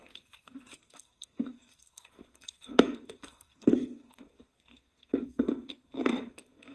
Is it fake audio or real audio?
fake